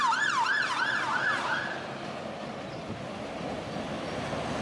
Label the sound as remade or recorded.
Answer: recorded